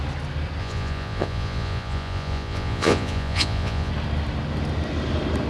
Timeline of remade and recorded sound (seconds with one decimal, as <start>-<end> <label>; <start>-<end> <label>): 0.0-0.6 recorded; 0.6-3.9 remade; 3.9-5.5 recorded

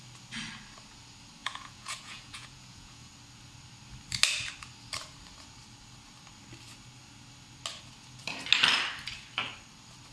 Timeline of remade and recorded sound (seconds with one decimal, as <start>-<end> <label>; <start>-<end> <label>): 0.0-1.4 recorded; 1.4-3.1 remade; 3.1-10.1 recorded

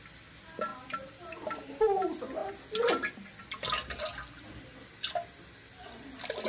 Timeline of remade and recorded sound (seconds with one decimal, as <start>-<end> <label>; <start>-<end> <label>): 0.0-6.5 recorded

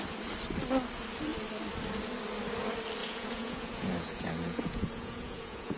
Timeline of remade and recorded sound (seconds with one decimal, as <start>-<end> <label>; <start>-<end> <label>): 0.0-3.0 recorded; 3.0-5.8 remade

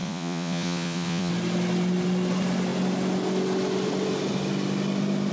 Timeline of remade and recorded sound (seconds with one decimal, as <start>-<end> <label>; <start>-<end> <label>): 0.0-1.3 remade; 1.3-5.3 recorded

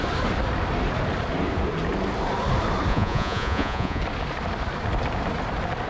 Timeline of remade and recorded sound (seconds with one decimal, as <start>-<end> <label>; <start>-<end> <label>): 0.0-2.9 recorded; 2.9-4.0 remade; 4.0-5.9 recorded